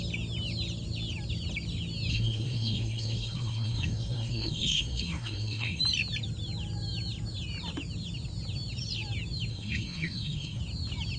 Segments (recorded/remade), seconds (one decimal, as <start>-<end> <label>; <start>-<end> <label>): 0.0-2.1 recorded; 2.1-5.8 remade; 5.8-9.5 recorded; 9.5-10.6 remade; 10.6-11.2 recorded